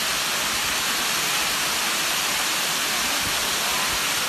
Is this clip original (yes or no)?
yes